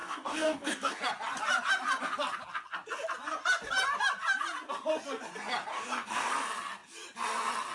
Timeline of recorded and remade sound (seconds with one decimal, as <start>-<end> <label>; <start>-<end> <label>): 0.0-1.0 remade; 1.0-5.7 recorded; 5.7-6.3 remade; 6.3-7.7 recorded